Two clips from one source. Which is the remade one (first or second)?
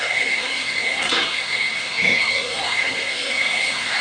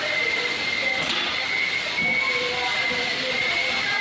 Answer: first